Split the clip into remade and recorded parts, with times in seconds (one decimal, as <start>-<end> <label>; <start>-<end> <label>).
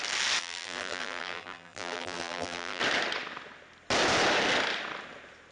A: 0.0-0.4 recorded; 0.4-2.8 remade; 2.8-5.5 recorded